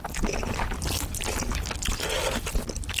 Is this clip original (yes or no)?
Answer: yes